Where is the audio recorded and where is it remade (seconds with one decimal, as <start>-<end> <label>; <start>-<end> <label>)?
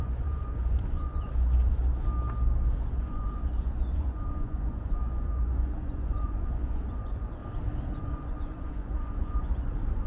0.0-1.8 remade; 1.8-2.9 recorded; 2.9-7.4 remade; 7.4-8.0 recorded; 8.0-10.1 remade